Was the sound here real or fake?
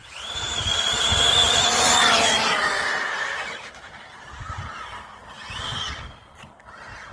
real